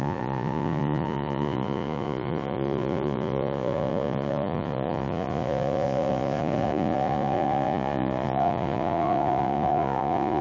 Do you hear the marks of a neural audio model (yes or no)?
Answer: yes